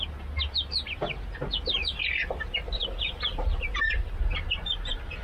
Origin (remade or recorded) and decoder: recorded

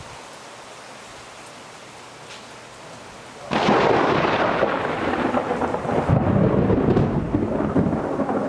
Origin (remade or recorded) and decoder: recorded